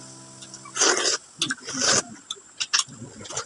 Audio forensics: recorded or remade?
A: recorded